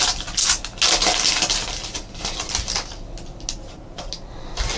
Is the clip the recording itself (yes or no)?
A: yes